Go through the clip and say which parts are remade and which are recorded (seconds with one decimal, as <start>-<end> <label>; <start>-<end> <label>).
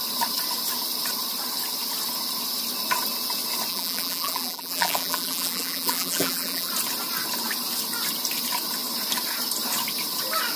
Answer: 0.0-3.7 recorded; 3.7-6.7 remade; 6.7-10.6 recorded